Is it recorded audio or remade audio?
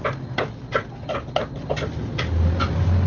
recorded